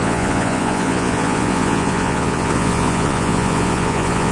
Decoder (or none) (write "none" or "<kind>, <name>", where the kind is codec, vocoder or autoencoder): vocoder, Vocos